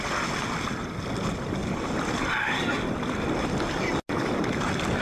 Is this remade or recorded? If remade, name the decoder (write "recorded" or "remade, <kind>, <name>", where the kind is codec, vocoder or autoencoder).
recorded